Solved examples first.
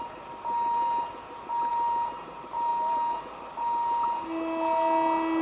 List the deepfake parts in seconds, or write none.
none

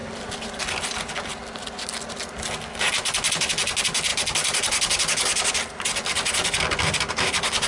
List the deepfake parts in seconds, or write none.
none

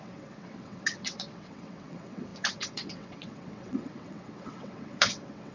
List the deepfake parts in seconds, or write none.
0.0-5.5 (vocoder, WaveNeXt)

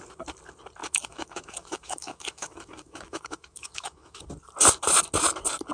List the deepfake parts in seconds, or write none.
0.8-4.2 (autoencoder, DAC-VAE)

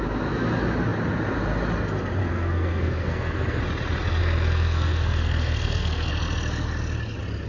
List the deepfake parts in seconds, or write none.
2.2-3.6 (codec, SNAC); 4.2-6.1